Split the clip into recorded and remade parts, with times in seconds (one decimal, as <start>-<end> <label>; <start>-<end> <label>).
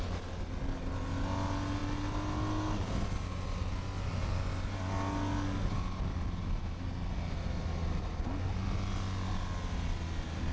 0.0-10.5 recorded